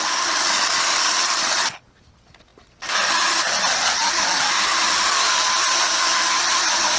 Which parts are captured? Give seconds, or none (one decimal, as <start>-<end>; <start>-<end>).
0.0-7.0